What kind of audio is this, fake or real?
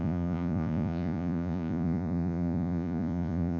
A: fake